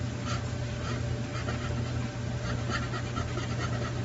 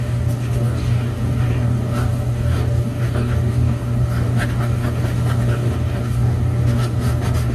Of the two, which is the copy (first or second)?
second